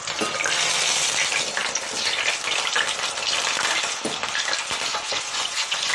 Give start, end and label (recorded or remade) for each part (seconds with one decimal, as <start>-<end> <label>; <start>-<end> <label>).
0.0-4.9 recorded; 4.9-5.9 remade